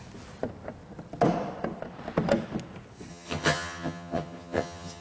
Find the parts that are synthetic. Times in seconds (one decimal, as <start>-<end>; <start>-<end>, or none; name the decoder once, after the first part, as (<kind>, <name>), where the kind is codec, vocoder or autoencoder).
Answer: 3.1-5.0 (vocoder, HiFi-GAN)